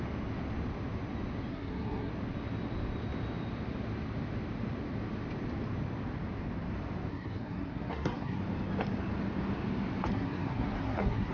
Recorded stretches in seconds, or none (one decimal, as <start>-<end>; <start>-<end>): 0.0-1.5; 2.1-7.1; 8.4-10.1